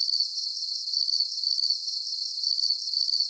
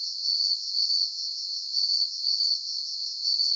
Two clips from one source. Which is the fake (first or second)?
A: second